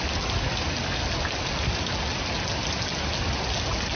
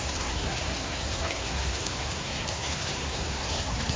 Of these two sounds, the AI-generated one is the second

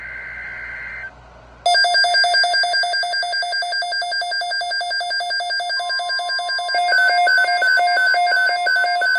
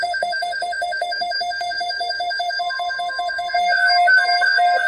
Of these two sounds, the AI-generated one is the second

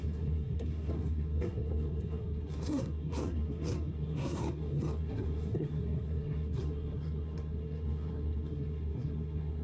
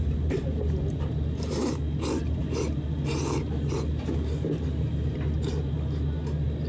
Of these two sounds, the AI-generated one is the first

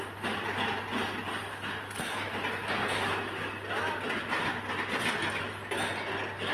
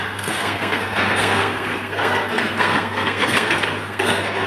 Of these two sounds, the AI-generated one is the second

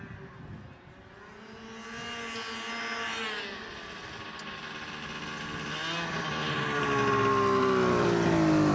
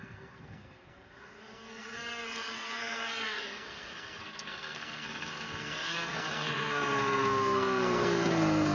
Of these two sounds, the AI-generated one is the second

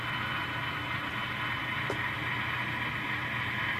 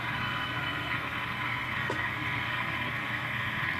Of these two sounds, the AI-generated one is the second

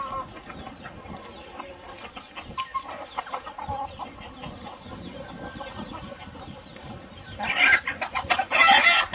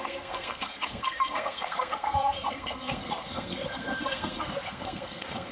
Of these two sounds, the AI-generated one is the second